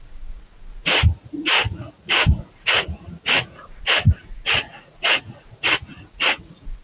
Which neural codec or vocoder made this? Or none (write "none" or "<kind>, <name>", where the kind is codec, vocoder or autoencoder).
vocoder, Vocos